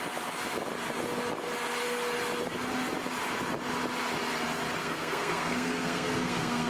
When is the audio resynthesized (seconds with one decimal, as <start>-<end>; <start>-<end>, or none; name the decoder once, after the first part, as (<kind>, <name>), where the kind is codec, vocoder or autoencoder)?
4.8-6.7 (codec, SNAC)